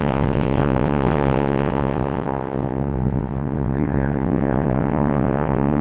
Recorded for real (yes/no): no